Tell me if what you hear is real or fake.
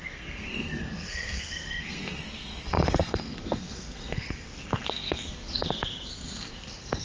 fake